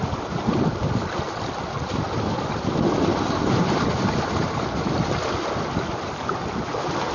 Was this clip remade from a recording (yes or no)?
no